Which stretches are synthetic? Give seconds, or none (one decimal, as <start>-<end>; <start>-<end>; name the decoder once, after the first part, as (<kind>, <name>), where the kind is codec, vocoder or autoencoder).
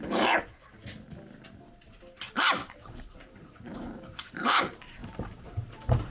2.6-4.6 (vocoder, BigVGAN v2); 5.0-6.1